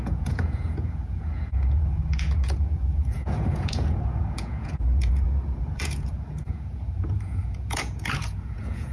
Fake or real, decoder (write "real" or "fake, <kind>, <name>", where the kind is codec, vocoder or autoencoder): fake, vocoder, Vocos